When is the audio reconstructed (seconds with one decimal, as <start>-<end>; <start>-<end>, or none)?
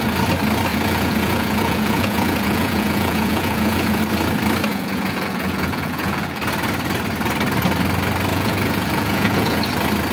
0.7-4.0; 4.7-6.4; 8.3-9.6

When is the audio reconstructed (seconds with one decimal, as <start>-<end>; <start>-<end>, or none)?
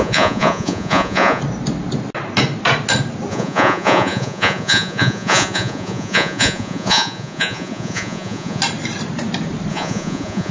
0.0-1.4; 3.3-8.6; 9.7-10.5